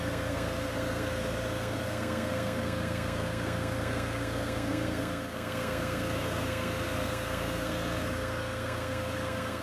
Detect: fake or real fake